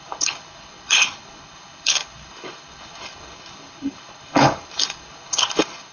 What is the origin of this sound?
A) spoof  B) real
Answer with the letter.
A